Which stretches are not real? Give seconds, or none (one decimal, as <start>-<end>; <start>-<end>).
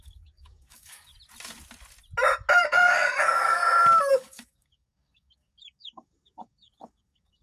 0.0-1.1; 2.6-3.6; 4.1-7.4